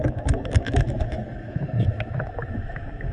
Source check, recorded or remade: remade